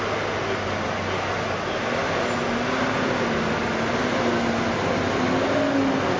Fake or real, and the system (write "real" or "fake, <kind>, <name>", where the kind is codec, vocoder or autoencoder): real